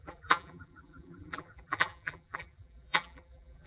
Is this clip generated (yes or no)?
yes